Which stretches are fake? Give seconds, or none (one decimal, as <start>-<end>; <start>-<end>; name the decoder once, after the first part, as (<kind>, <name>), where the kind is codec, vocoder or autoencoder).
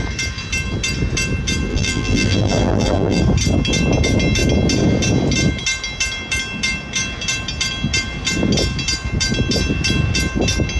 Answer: 1.7-3.2 (vocoder, BigVGAN v2)